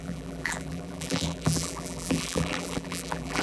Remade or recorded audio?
remade